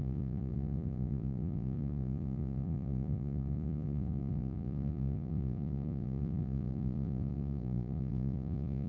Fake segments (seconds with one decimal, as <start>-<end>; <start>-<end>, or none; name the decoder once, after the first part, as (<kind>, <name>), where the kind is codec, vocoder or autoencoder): 0.0-8.9 (vocoder, Vocos)